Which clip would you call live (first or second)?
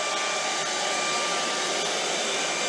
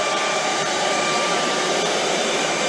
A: first